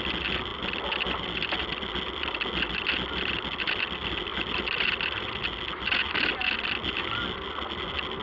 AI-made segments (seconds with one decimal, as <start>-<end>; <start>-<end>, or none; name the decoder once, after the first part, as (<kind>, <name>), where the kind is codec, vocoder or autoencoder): none